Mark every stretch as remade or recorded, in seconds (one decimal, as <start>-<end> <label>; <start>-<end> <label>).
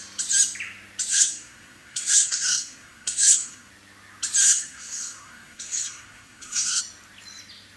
0.0-1.1 recorded; 1.1-3.7 remade; 3.7-4.4 recorded; 4.4-6.8 remade; 6.8-7.8 recorded